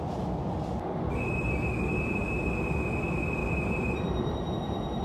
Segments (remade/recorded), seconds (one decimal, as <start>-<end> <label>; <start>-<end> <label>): 0.0-3.4 recorded; 3.4-4.5 remade; 4.5-5.0 recorded